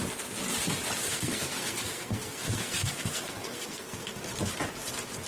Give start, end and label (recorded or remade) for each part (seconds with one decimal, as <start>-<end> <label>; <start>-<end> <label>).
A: 0.0-1.0 recorded; 1.0-4.2 remade; 4.2-5.3 recorded